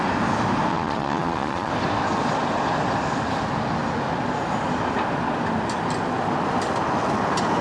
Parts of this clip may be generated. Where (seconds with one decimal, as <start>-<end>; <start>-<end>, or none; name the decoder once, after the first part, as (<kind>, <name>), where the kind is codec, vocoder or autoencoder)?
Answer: 0.7-1.7 (vocoder, Vocos)